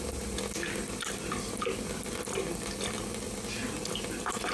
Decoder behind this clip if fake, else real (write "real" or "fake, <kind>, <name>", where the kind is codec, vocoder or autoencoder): real